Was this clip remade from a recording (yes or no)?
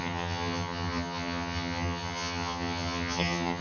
yes